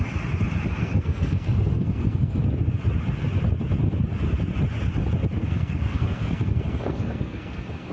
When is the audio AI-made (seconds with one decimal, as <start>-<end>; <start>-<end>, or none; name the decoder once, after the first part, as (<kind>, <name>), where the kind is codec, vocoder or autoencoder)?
0.8-2.4 (codec, SNAC); 5.4-7.9

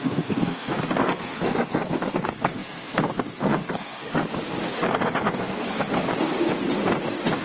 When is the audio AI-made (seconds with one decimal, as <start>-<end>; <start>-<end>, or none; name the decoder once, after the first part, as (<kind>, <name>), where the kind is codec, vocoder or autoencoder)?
0.0-4.2 (codec, SNAC); 4.9-5.9

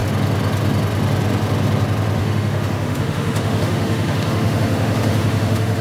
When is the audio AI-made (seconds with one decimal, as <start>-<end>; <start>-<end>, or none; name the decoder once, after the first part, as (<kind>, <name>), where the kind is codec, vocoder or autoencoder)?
2.2-5.8 (autoencoder, DAC-VAE)

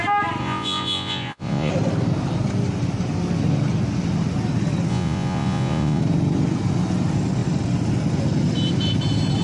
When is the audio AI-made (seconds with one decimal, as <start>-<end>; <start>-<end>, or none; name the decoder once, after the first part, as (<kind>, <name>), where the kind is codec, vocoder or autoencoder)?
0.4-1.7 (vocoder, Vocos); 4.9-6.0

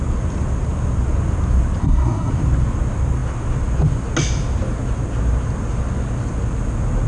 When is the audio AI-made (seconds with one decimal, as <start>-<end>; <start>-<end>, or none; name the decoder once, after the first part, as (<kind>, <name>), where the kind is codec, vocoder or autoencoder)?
1.8-2.3 (codec, SNAC)